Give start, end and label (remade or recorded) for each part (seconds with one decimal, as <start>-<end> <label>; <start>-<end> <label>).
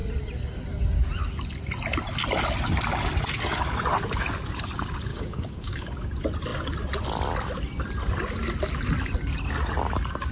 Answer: 0.0-5.1 recorded; 5.1-6.1 remade; 6.1-10.3 recorded